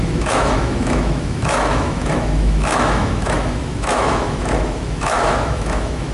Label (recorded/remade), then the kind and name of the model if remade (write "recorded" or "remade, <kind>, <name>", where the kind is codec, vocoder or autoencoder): remade, autoencoder, DAC-VAE